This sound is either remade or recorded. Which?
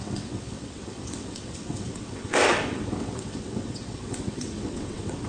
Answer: remade